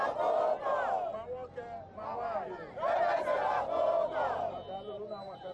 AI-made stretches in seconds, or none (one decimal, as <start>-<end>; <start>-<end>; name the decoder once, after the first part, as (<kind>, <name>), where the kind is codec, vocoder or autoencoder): none